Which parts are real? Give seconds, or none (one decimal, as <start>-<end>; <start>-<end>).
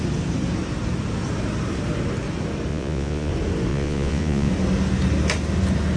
0.0-2.7; 3.3-3.7; 4.5-6.0